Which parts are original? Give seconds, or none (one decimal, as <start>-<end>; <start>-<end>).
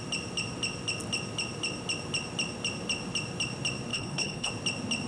0.0-3.9; 4.5-5.1